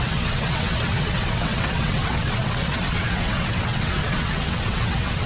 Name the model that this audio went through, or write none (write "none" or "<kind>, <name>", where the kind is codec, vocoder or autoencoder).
vocoder, WaveNeXt